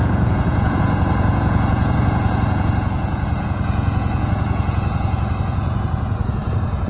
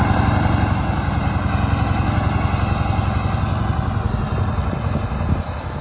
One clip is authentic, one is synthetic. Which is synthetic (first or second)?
first